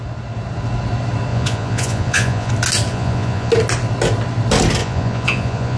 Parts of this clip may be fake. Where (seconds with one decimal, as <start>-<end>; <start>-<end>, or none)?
1.3-2.5; 2.9-3.5; 4.8-5.8